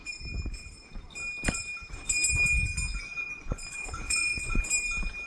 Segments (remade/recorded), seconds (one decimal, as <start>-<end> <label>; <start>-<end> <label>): 0.0-2.9 recorded; 2.9-4.7 remade; 4.7-5.3 recorded